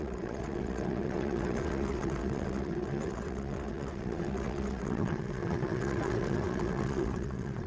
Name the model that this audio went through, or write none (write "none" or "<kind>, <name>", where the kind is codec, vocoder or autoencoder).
vocoder, WaveNeXt